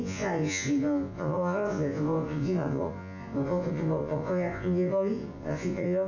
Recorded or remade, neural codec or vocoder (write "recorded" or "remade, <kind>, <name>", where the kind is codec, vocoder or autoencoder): remade, vocoder, Vocos